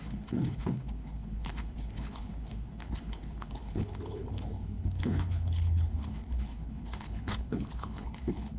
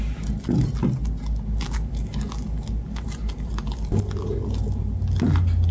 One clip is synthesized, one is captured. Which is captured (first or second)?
second